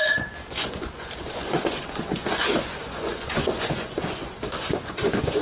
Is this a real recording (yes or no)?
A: no